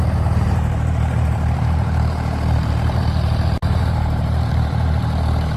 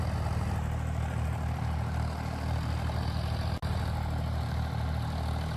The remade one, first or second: first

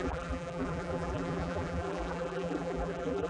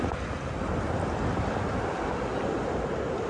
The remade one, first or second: first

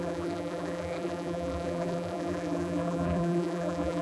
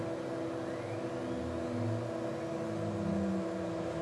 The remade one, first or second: first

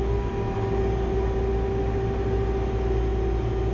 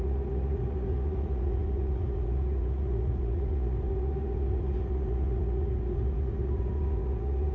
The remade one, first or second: second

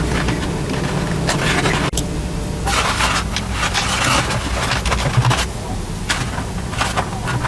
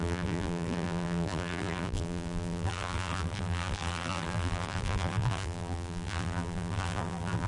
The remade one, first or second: second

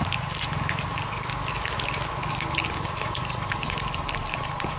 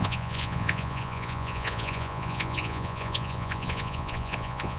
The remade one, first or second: second